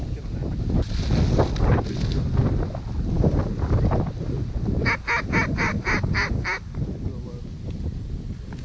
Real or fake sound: real